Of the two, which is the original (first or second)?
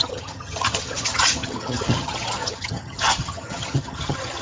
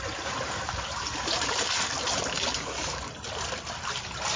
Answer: second